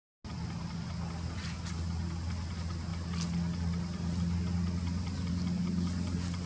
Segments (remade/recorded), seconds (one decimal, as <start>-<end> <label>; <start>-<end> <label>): 0.0-6.5 recorded